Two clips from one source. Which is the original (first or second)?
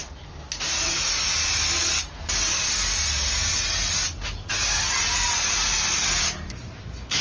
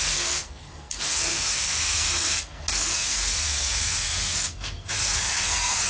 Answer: first